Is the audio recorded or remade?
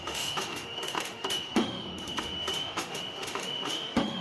remade